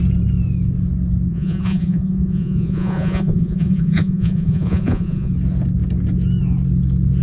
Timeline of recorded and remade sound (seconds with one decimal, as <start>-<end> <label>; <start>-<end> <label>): 0.0-1.3 recorded; 1.3-5.3 remade; 5.3-7.2 recorded